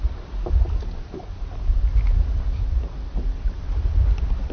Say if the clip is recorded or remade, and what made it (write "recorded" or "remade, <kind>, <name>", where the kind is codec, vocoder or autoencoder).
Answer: recorded